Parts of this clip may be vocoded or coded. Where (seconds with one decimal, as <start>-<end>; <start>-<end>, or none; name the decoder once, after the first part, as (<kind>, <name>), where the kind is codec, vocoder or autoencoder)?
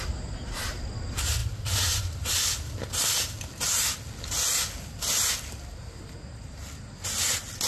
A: none